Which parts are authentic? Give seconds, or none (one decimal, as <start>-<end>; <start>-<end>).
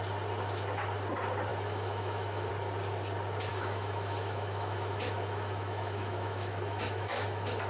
0.0-1.5; 2.5-3.5